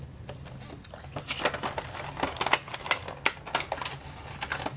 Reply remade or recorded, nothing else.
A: recorded